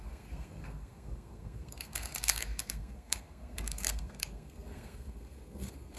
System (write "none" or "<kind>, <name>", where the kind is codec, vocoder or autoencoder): codec, SNAC